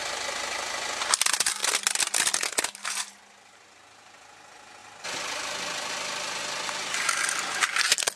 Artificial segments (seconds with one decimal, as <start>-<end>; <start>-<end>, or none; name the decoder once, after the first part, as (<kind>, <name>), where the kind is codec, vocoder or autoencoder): none

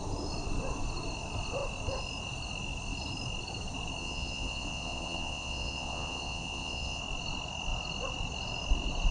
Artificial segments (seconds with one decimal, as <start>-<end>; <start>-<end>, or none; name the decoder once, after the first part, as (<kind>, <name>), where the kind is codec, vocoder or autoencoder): 4.0-7.0 (vocoder, Vocos)

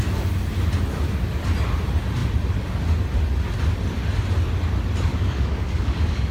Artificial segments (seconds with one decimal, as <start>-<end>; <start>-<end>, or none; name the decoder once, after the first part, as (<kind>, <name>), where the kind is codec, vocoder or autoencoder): 5.1-6.3 (codec, DAC)

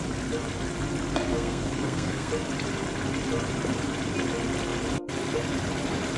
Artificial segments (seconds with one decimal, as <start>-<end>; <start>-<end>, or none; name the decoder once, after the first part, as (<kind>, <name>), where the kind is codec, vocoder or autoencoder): 1.3-2.3 (codec, SNAC)

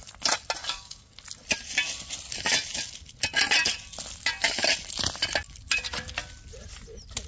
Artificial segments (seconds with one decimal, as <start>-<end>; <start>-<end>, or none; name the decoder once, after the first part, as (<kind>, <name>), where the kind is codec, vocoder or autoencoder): 0.6-1.1 (codec, DAC)